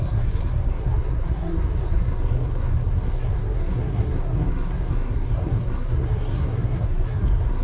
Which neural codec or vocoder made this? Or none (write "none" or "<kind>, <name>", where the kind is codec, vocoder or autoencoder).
codec, SNAC